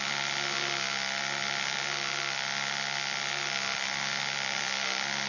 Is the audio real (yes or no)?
yes